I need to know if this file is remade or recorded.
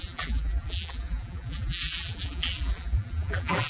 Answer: remade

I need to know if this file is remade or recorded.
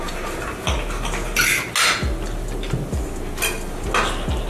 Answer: recorded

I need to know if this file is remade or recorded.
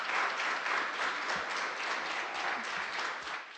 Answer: recorded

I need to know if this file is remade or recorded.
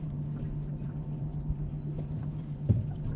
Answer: remade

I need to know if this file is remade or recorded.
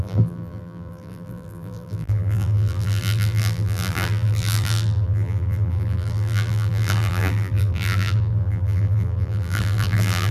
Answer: remade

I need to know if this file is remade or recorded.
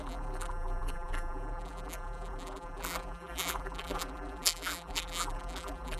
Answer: remade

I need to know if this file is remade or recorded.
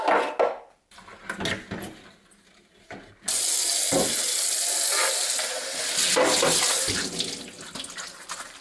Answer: recorded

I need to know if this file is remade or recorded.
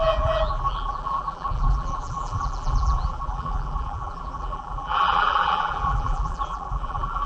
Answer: remade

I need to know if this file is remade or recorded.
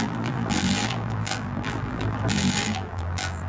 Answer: remade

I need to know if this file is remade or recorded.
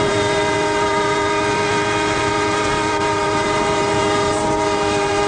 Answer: remade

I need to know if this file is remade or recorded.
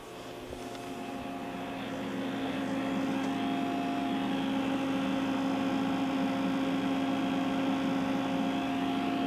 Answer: recorded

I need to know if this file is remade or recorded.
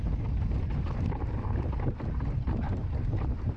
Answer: remade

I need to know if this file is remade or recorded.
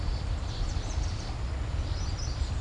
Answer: recorded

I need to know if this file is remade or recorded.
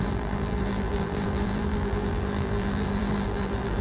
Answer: remade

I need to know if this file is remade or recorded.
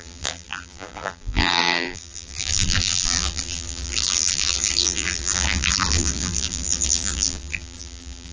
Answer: remade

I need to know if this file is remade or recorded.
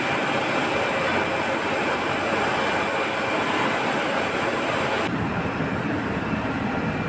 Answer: remade